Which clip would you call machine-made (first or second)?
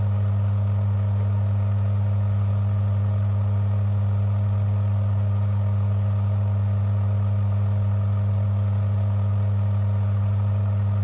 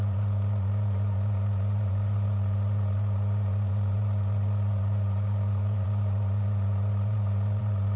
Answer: second